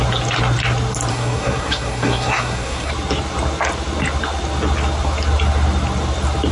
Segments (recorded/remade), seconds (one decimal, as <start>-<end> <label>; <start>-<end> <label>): 0.0-1.1 recorded; 1.1-2.9 remade; 2.9-6.5 recorded

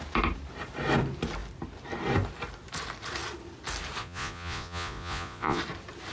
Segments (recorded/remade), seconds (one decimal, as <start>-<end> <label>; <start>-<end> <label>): 0.0-4.0 recorded; 4.0-5.6 remade; 5.6-6.1 recorded

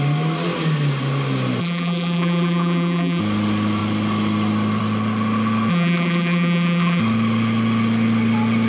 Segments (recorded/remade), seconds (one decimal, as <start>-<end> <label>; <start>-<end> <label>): 0.0-1.6 recorded; 1.6-3.2 remade; 3.2-5.7 recorded; 5.7-7.0 remade; 7.0-8.7 recorded